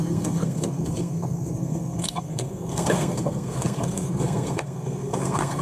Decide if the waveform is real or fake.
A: fake